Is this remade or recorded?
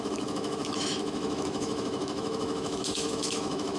remade